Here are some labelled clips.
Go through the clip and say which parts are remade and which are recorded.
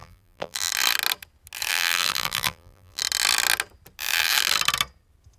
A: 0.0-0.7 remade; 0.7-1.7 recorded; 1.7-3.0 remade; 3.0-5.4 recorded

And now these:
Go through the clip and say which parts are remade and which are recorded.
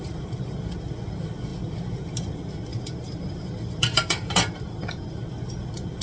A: 0.0-2.7 recorded; 2.7-5.2 remade; 5.2-6.0 recorded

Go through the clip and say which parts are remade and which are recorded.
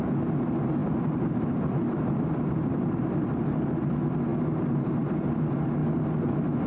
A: 0.0-0.8 recorded; 0.8-3.6 remade; 3.6-6.7 recorded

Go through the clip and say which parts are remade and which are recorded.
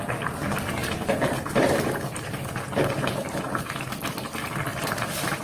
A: 0.0-0.8 recorded; 0.8-3.8 remade; 3.8-4.7 recorded; 4.7-5.4 remade